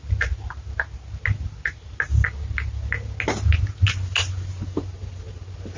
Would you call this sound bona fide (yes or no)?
yes